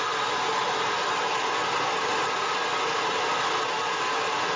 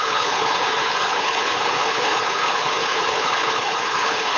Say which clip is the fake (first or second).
second